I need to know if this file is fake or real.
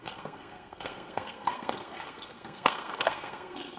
fake